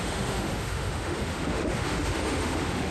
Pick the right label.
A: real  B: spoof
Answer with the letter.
B